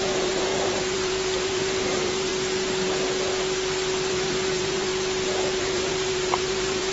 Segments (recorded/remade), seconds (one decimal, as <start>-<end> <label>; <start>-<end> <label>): 0.0-2.3 remade; 2.3-4.1 recorded; 4.1-4.9 remade; 4.9-5.6 recorded; 5.6-6.9 remade